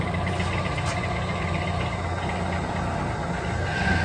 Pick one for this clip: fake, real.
real